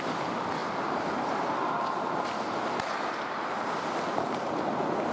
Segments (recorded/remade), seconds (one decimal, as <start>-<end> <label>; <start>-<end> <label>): 0.0-0.6 recorded; 0.6-3.7 remade; 3.7-5.1 recorded